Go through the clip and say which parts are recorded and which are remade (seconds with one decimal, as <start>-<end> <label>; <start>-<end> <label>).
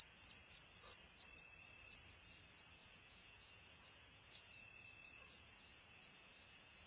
0.0-2.8 recorded; 2.8-6.9 remade